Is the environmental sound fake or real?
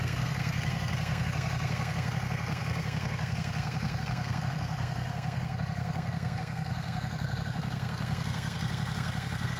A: fake